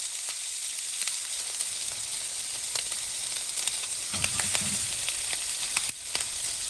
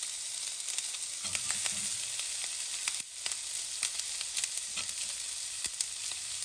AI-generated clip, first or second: first